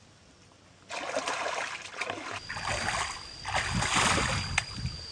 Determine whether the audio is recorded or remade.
recorded